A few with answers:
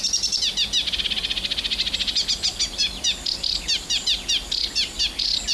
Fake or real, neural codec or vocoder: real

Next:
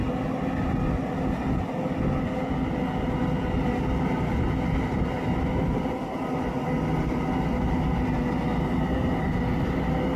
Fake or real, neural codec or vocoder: real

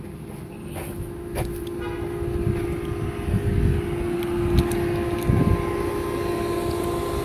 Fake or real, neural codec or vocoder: real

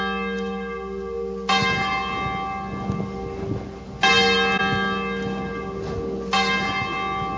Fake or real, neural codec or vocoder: real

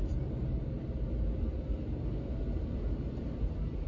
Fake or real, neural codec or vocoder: real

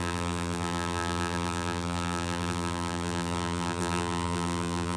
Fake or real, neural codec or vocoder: fake, vocoder, BigVGAN v2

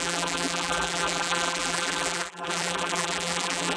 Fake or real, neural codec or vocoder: fake, vocoder, BigVGAN v2